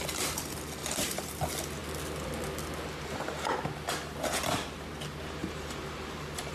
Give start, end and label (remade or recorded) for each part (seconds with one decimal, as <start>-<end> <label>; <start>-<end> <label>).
0.0-0.8 recorded; 0.8-1.4 remade; 1.4-5.4 recorded; 5.4-6.5 remade